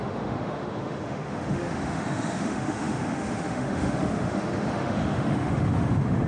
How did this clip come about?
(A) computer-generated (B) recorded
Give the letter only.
A